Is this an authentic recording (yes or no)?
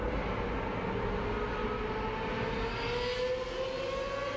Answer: yes